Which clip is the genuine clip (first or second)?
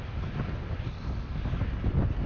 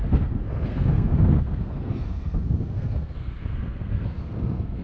first